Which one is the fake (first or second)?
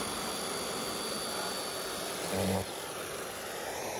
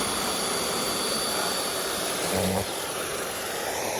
second